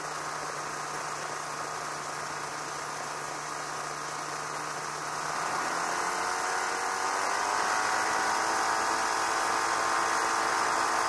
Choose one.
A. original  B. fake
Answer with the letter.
A